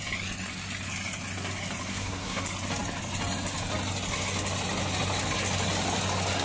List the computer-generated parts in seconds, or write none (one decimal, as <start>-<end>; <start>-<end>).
1.9-2.4